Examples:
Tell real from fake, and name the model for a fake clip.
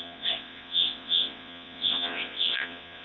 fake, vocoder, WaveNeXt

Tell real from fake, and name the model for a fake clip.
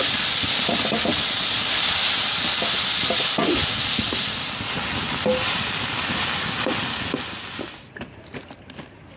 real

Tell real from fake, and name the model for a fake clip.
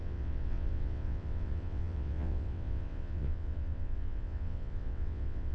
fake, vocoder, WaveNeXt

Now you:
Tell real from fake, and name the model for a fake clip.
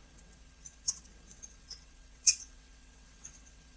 fake, vocoder, WaveNeXt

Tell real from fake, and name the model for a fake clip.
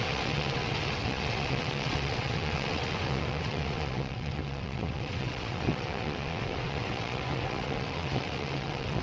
fake, vocoder, WaveNeXt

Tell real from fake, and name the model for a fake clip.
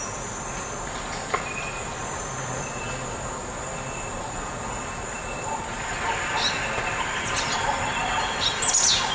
real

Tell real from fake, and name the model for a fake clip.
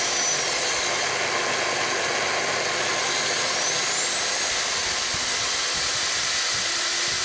real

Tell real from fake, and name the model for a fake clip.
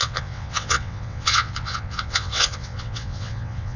fake, vocoder, WaveNeXt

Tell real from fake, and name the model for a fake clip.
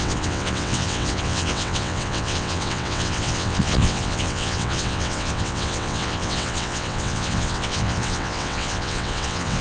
fake, vocoder, WaveNeXt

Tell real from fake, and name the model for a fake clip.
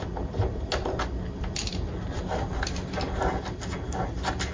real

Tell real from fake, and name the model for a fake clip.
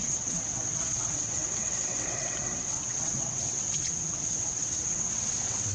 fake, vocoder, WaveNeXt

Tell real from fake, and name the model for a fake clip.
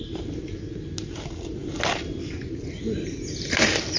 real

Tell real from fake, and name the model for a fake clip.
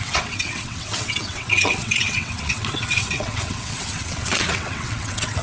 fake, vocoder, WaveNeXt